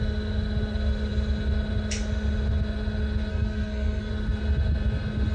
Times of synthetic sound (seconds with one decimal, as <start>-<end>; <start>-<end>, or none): 3.3-4.1